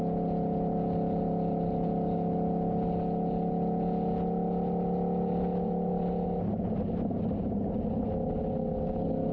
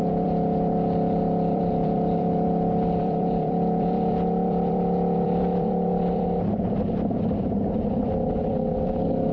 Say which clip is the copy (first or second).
second